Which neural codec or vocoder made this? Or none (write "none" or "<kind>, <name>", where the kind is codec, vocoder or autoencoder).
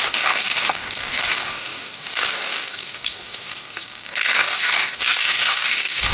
codec, DAC